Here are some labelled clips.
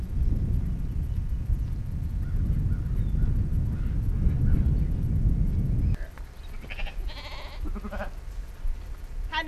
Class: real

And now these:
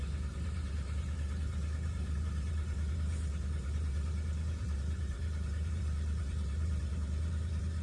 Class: fake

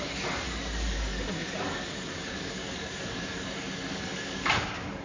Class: fake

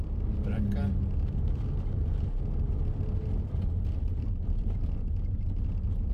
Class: real